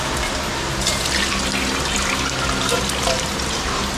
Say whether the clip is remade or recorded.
recorded